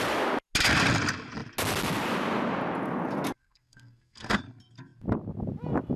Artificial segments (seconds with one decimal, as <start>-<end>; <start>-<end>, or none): 3.4-4.4